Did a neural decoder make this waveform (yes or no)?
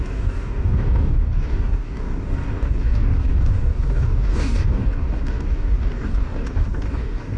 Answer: yes